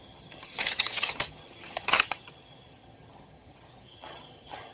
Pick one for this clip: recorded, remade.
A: remade